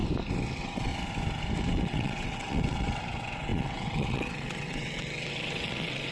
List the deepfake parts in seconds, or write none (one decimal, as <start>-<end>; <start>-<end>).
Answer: 0.5-0.9; 1.6-6.1